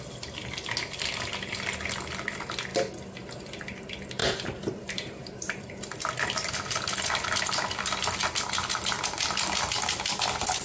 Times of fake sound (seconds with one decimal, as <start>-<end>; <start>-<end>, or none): 4.2-5.6